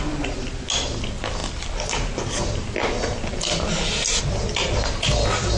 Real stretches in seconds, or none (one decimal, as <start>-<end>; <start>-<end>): 0.0-5.6